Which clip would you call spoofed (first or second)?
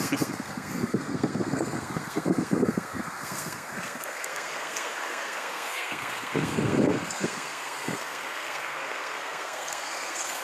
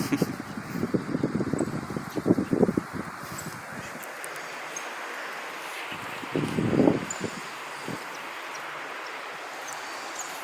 first